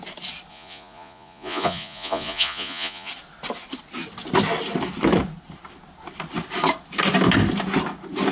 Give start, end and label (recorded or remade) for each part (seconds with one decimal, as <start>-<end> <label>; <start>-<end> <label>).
0.0-0.5 recorded; 0.5-3.1 remade; 3.1-8.3 recorded